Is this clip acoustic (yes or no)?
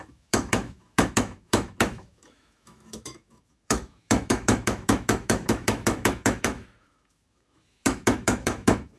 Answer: no